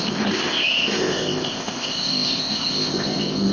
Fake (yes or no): yes